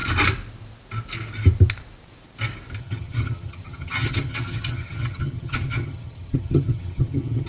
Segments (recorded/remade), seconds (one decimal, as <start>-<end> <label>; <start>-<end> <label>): 0.0-2.8 recorded; 2.8-7.5 remade